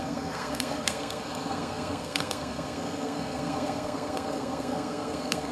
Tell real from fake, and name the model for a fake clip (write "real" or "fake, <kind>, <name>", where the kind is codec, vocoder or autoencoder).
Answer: fake, codec, SNAC